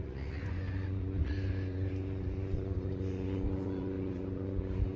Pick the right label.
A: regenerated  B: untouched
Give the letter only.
A